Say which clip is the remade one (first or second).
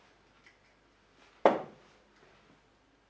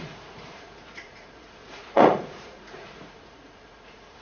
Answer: second